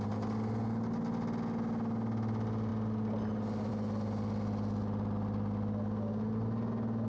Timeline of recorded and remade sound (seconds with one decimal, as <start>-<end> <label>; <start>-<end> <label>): 0.0-7.1 recorded